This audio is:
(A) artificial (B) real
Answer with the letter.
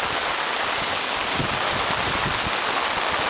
B